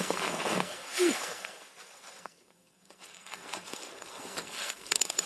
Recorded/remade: remade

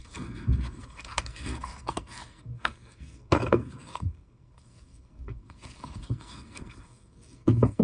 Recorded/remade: remade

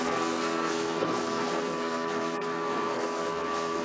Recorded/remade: remade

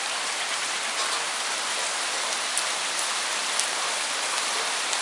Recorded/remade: recorded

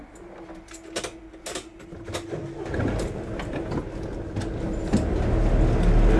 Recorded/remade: recorded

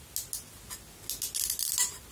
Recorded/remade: recorded